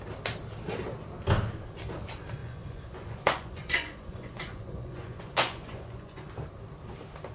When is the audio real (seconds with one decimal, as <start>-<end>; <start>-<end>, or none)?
0.0-2.4; 6.3-7.3